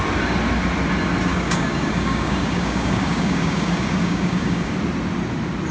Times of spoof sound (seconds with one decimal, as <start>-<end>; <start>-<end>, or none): 1.3-4.7